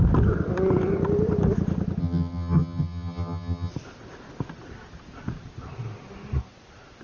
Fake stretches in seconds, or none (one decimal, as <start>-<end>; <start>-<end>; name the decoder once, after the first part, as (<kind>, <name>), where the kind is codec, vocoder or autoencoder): 2.0-3.7 (vocoder, HiFi-GAN)